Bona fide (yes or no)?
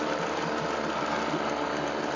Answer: yes